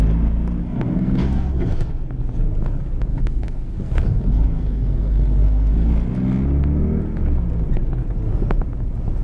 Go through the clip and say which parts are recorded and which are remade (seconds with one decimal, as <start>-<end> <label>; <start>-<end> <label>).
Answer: 0.0-0.6 recorded; 0.6-1.9 remade; 1.9-3.1 recorded; 3.1-5.9 remade; 5.9-9.2 recorded